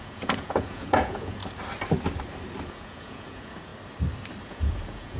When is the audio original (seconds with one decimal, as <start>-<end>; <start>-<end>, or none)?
1.4-2.7; 3.7-4.4